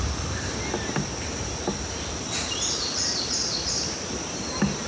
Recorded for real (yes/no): yes